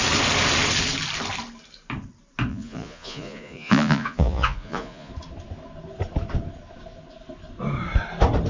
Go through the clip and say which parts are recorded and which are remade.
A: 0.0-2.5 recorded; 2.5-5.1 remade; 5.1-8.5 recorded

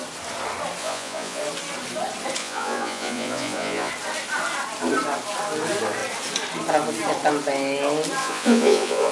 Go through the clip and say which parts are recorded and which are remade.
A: 0.0-0.8 recorded; 0.8-1.4 remade; 1.4-2.4 recorded; 2.4-3.9 remade; 3.9-8.2 recorded; 8.2-9.1 remade

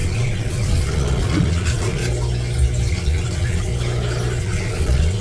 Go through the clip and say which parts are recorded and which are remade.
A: 0.0-2.0 remade; 2.0-2.9 recorded; 2.9-3.7 remade; 3.7-4.4 recorded; 4.4-5.2 remade

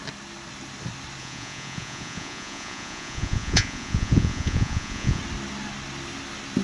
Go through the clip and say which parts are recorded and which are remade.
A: 0.0-1.2 recorded; 1.2-5.2 remade; 5.2-6.6 recorded

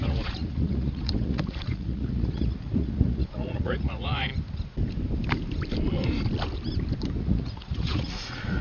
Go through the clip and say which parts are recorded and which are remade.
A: 0.0-4.3 remade; 4.3-7.2 recorded; 7.2-8.6 remade

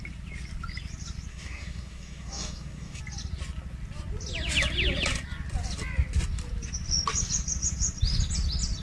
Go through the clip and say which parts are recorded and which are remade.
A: 0.0-1.3 recorded; 1.3-3.0 remade; 3.0-8.8 recorded

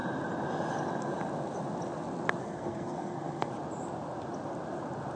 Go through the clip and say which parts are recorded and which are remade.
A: 0.0-2.4 recorded; 2.4-3.5 remade; 3.5-5.2 recorded

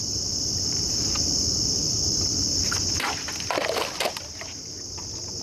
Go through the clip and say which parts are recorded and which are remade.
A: 0.0-3.2 remade; 3.2-5.4 recorded